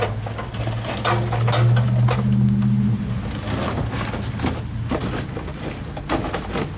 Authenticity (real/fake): real